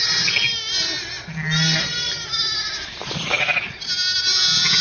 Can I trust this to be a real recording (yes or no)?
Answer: yes